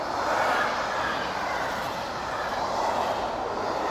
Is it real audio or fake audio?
real